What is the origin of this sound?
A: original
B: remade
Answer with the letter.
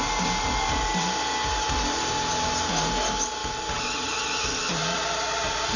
A